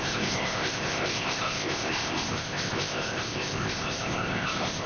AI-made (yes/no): yes